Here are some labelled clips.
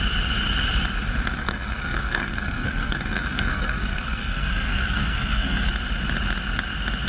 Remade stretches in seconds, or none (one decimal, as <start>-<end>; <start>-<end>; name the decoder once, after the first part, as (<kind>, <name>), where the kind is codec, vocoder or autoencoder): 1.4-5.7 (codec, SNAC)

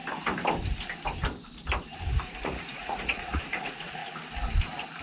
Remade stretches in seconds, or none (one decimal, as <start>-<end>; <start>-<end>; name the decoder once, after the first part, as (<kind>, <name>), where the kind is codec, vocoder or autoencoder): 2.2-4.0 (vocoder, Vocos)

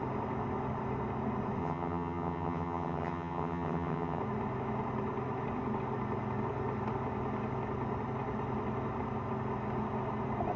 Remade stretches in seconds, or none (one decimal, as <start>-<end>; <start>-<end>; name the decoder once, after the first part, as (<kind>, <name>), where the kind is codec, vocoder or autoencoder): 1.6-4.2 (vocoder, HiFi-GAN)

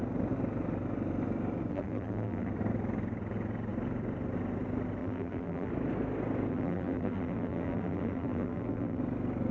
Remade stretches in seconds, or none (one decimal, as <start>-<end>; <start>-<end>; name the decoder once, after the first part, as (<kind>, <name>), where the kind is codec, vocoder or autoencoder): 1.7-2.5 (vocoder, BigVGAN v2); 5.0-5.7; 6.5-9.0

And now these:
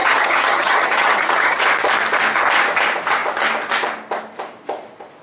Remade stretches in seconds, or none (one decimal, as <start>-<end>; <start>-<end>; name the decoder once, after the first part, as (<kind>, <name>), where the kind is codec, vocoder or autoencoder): 0.0-1.6 (vocoder, HiFi-GAN)